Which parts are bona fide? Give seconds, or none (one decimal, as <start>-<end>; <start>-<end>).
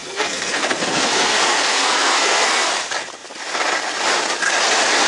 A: 2.7-5.1